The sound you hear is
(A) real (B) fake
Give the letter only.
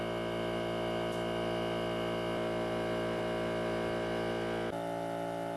A